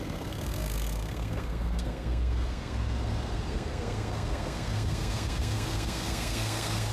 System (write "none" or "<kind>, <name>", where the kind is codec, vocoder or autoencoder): codec, SNAC